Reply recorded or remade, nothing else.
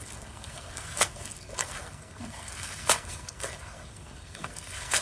remade